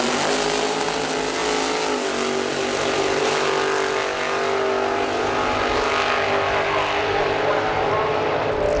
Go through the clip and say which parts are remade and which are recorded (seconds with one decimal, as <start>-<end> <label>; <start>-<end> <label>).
0.0-8.8 recorded